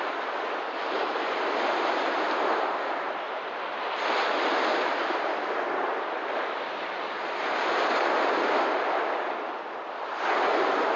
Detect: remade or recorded remade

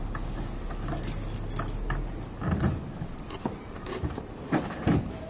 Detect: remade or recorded recorded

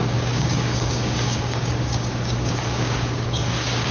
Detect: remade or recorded remade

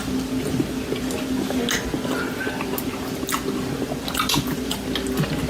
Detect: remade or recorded recorded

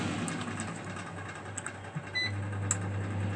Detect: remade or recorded recorded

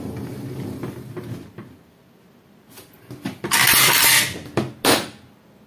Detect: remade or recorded recorded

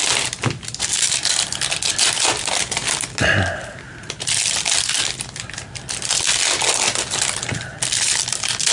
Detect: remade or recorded recorded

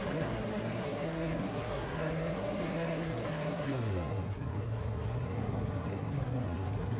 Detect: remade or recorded remade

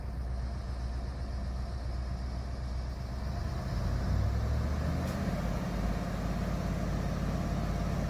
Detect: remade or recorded recorded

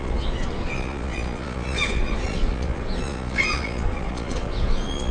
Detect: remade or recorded remade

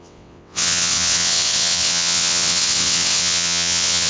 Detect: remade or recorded remade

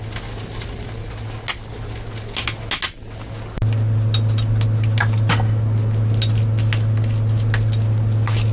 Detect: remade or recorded recorded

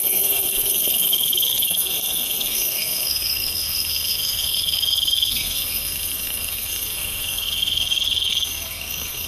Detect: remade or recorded remade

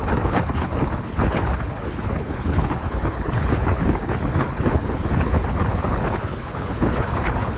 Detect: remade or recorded remade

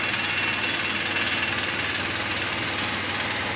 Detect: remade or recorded recorded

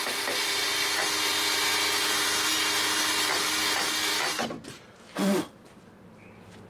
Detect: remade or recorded recorded